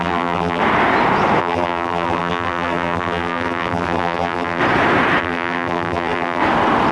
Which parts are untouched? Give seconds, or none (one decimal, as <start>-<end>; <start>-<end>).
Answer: 0.6-1.4; 4.6-5.2; 6.4-6.9